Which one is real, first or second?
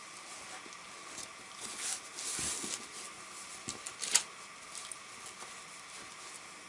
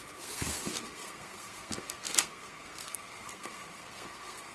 first